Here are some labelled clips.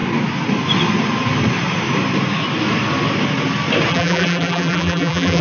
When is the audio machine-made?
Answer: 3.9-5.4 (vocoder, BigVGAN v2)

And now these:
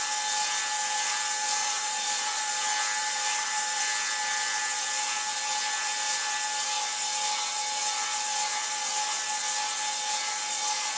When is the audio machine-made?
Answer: 1.6-2.5 (vocoder, BigVGAN v2); 3.0-3.8

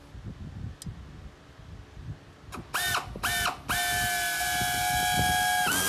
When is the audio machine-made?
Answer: none

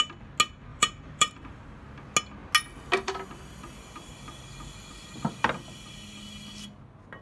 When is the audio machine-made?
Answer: 0.7-1.8 (vocoder, BigVGAN v2)

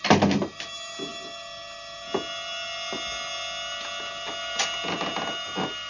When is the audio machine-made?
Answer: none